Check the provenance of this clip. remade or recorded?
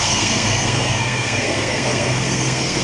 remade